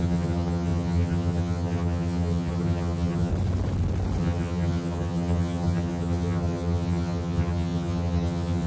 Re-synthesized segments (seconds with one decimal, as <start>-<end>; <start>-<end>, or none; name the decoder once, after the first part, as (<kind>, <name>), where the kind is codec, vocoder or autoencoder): 0.0-3.3 (vocoder, HiFi-GAN); 4.2-8.7

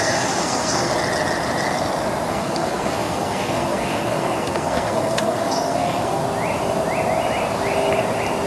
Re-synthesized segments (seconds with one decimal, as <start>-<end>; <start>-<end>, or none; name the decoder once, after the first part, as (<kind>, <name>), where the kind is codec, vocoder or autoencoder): 0.0-0.9 (codec, SNAC); 2.3-6.2

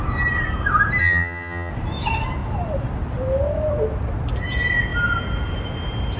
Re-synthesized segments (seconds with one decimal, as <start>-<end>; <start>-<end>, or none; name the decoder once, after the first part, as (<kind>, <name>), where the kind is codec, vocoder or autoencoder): 1.0-1.7 (vocoder, HiFi-GAN)

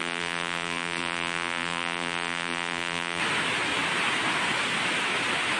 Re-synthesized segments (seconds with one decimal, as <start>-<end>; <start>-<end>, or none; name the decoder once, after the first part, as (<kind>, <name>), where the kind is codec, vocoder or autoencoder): 0.0-3.2 (vocoder, BigVGAN v2)